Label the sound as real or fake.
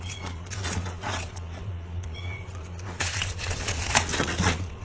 fake